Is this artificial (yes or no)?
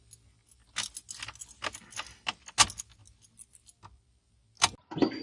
no